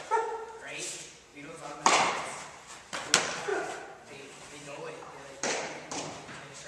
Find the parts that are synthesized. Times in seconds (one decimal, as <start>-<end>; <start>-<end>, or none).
1.3-2.1; 3.5-6.7